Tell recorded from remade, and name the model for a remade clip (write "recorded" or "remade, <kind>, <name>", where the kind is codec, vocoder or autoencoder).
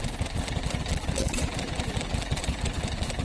remade, vocoder, BigVGAN v2